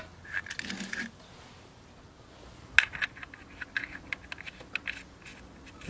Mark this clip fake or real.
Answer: real